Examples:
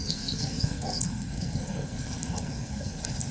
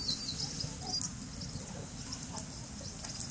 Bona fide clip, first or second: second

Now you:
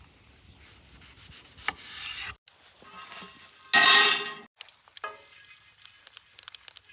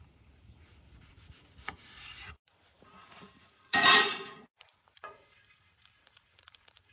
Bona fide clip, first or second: first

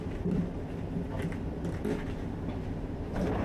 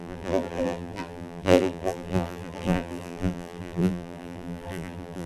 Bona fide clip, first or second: first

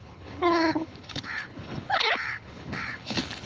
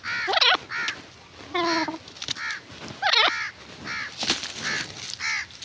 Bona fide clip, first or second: second